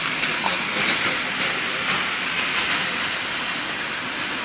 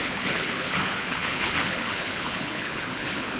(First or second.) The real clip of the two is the first